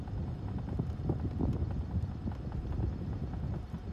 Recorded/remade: recorded